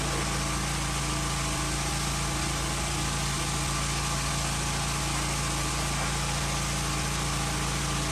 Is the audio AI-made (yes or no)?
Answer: no